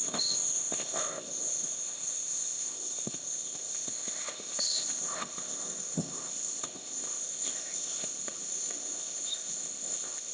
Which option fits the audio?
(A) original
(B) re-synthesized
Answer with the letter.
B